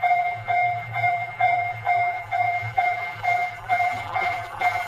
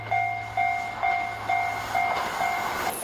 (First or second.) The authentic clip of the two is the second